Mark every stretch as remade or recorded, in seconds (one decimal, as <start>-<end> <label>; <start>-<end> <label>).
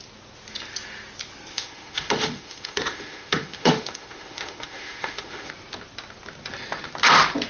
0.0-1.5 recorded; 1.5-5.5 remade; 5.5-7.5 recorded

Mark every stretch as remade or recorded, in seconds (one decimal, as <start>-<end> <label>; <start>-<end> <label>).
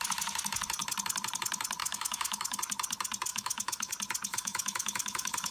0.0-1.8 recorded; 1.8-2.6 remade; 2.6-3.3 recorded; 3.3-3.9 remade; 3.9-4.3 recorded; 4.3-5.5 remade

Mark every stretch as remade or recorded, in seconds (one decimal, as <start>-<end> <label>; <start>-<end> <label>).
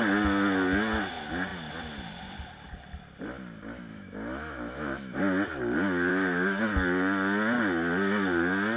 0.0-3.9 recorded; 3.9-5.2 remade; 5.2-6.1 recorded; 6.1-6.6 remade; 6.6-8.8 recorded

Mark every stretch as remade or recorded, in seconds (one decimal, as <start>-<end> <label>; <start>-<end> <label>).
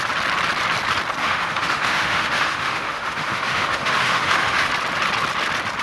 0.0-1.2 recorded; 1.2-4.7 remade; 4.7-5.8 recorded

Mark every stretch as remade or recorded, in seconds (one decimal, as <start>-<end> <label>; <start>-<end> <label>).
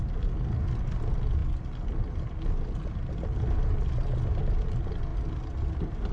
0.0-6.1 recorded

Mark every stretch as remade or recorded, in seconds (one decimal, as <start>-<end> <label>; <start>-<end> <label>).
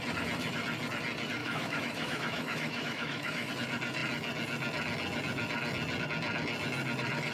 0.0-1.4 recorded; 1.4-3.5 remade; 3.5-7.3 recorded